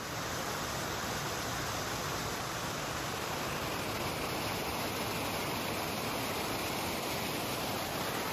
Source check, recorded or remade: recorded